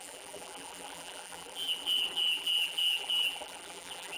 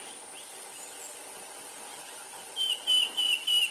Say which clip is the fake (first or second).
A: first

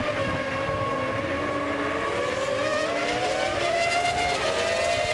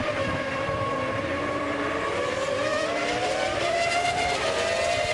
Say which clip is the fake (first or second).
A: second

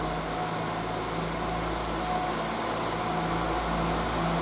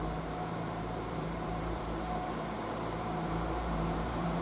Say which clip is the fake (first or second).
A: second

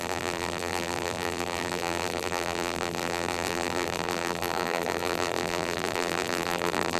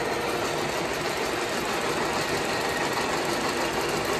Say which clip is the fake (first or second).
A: first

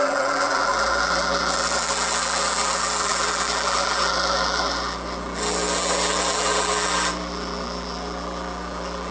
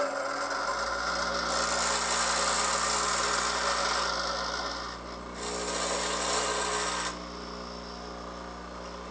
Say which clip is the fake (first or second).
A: first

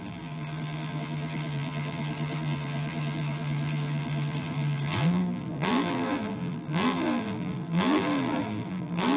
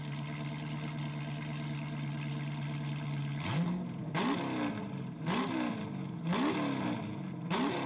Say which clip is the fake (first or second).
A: first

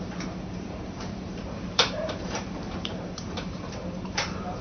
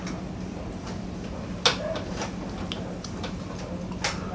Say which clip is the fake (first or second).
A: first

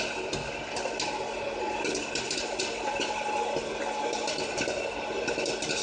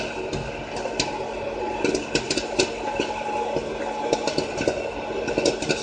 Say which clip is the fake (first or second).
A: first